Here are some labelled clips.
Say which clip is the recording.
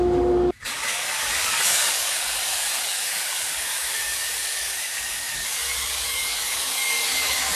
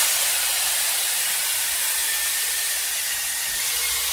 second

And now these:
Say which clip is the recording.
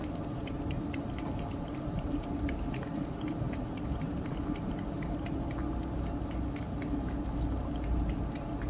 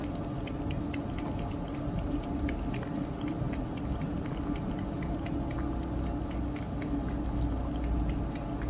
second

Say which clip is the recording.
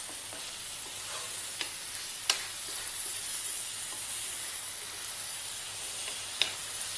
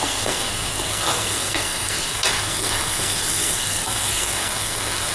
first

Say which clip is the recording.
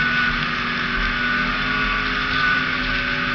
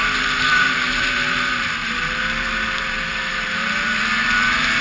first